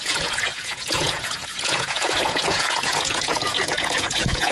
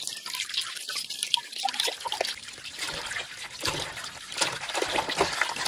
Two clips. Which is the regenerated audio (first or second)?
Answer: first